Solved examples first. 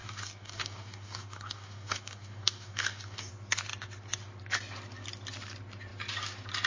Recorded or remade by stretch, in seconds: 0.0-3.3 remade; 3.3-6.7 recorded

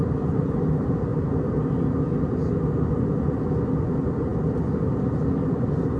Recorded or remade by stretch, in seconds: 0.0-6.0 recorded